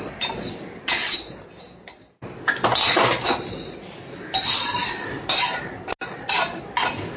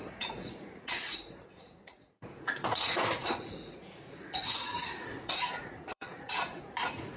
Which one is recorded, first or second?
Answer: first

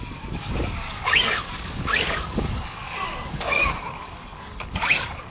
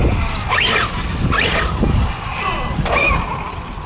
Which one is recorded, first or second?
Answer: second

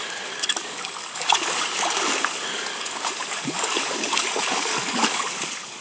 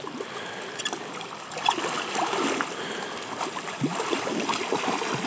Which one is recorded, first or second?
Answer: second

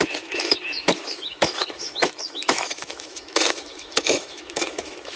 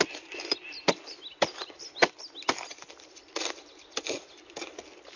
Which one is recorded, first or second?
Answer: second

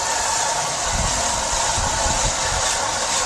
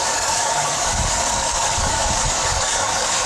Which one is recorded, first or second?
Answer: first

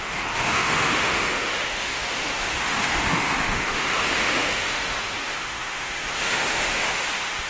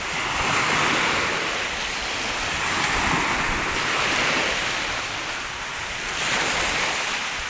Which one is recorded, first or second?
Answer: second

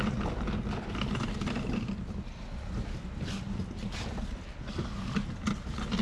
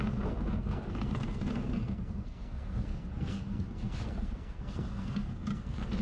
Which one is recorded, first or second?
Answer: first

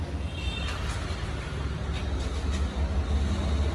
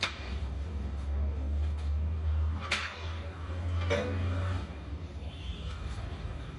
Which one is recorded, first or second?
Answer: first